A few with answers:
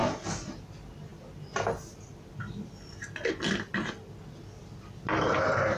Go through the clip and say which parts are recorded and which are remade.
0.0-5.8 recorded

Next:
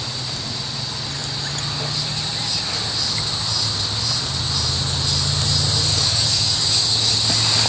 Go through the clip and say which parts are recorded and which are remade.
0.0-5.9 recorded; 5.9-7.1 remade; 7.1-7.7 recorded

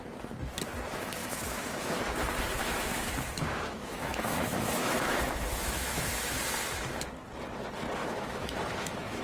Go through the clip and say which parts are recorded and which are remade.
0.0-1.2 recorded; 1.2-2.0 remade; 2.0-2.6 recorded; 2.6-6.4 remade; 6.4-8.0 recorded; 8.0-9.2 remade

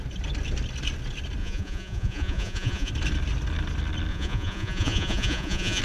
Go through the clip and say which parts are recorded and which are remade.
0.0-1.4 recorded; 1.4-2.9 remade; 2.9-4.1 recorded; 4.1-5.8 remade

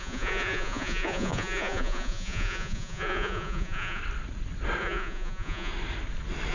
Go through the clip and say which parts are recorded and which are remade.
0.0-4.0 remade; 4.0-4.8 recorded; 4.8-5.7 remade; 5.7-6.5 recorded

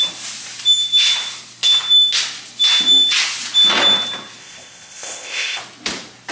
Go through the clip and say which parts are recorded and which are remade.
0.0-4.4 recorded; 4.4-5.6 remade; 5.6-6.3 recorded

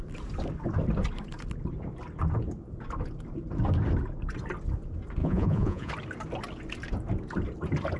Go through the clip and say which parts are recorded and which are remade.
0.0-5.2 recorded; 5.2-5.9 remade; 5.9-8.0 recorded